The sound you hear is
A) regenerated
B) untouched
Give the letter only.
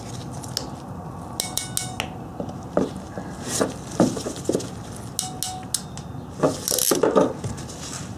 B